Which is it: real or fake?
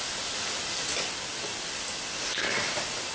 real